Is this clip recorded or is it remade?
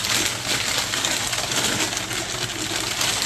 recorded